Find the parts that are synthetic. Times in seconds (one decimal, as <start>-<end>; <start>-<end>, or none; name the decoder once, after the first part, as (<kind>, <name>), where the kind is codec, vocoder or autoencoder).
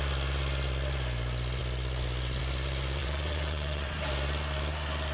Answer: 3.0-3.9 (vocoder, WaveNeXt)